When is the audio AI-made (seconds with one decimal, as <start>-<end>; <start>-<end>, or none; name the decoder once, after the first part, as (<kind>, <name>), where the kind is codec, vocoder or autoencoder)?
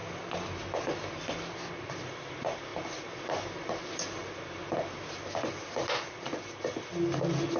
none